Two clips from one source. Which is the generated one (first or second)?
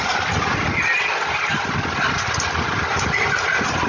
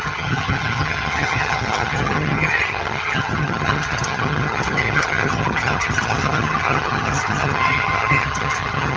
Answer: second